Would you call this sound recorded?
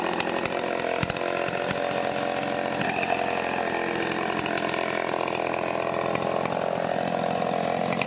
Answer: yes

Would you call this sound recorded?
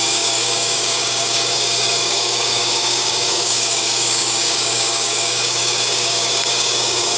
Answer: no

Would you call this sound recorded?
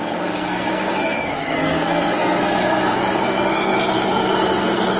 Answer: no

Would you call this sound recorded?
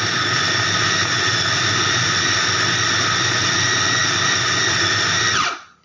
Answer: yes